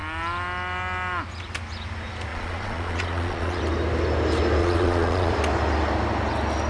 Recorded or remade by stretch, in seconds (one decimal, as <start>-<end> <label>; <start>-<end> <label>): 0.0-2.3 recorded; 2.3-3.6 remade; 3.6-4.6 recorded; 4.6-5.3 remade; 5.3-6.7 recorded